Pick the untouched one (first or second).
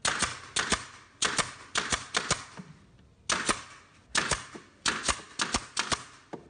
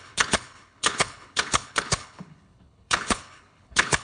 first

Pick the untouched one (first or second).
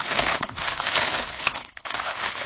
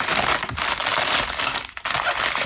second